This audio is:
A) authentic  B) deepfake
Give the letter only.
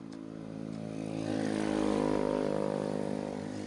A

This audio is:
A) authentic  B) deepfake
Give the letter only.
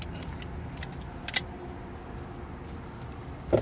A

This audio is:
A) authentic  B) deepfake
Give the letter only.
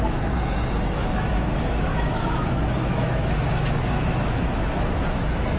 B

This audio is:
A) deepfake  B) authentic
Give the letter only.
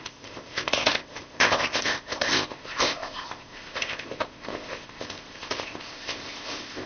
A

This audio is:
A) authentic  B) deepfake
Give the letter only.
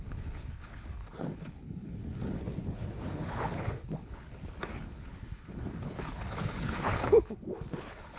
B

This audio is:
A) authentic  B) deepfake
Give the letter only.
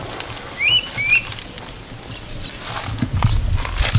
A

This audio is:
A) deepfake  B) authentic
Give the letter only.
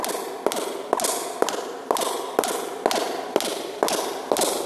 B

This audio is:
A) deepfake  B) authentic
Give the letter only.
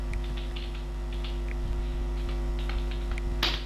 B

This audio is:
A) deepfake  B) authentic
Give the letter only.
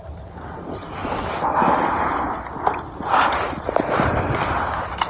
B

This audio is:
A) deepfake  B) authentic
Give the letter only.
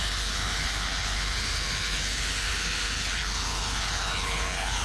A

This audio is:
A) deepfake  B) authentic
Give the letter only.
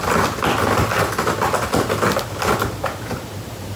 B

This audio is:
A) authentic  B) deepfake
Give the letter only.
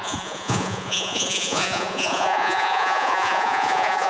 B